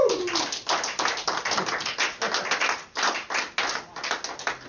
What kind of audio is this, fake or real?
real